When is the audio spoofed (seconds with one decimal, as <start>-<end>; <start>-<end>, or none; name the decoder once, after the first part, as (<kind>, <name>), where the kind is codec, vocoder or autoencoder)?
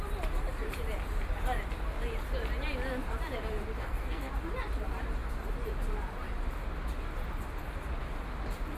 3.8-4.3 (codec, SNAC)